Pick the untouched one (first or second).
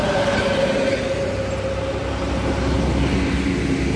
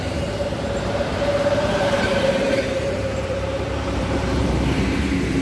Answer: first